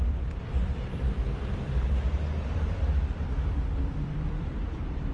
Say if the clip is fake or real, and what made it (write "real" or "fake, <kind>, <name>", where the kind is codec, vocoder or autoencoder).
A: fake, vocoder, BigVGAN v2